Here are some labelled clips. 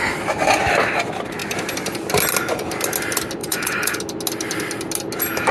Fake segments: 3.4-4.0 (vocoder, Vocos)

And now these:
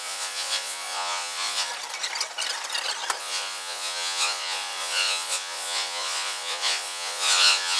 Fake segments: 0.0-1.7 (vocoder, Vocos); 3.2-7.8